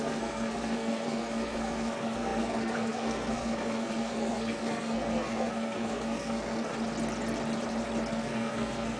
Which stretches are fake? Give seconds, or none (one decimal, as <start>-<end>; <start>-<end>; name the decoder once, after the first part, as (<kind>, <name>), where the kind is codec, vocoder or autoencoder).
0.0-6.7 (codec, SNAC); 8.1-9.0